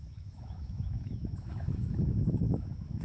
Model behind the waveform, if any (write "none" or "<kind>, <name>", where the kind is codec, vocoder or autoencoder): autoencoder, DAC-VAE